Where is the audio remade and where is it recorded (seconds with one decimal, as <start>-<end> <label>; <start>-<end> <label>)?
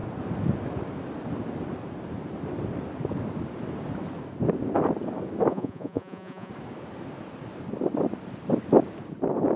0.0-5.5 recorded; 5.5-6.5 remade; 6.5-9.6 recorded